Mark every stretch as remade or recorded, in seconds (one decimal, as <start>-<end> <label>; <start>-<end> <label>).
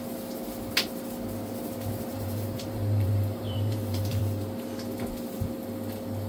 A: 0.0-2.1 recorded; 2.1-4.2 remade; 4.2-6.3 recorded